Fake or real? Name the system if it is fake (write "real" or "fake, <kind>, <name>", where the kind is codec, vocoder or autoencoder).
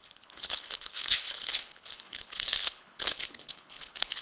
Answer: fake, codec, HILCodec